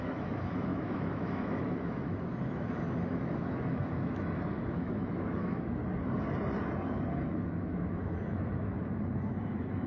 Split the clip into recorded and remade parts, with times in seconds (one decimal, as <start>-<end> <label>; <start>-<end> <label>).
0.0-5.8 remade; 5.8-7.1 recorded; 7.1-9.9 remade